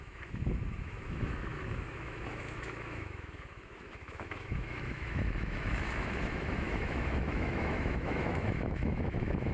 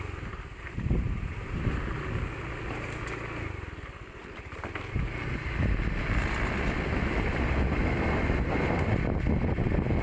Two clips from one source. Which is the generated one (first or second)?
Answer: first